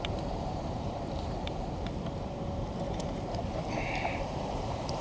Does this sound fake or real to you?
fake